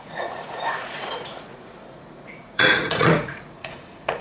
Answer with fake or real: fake